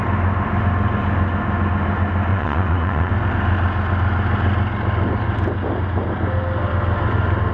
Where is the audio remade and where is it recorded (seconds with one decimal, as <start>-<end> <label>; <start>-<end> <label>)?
0.0-2.3 recorded; 2.3-3.1 remade; 3.1-7.5 recorded